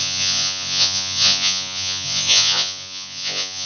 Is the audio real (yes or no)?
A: no